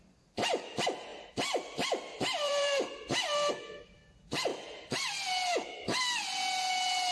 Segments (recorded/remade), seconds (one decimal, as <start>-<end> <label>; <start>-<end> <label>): 0.0-1.1 recorded; 1.1-3.5 remade; 3.5-4.5 recorded; 4.5-6.0 remade; 6.0-7.1 recorded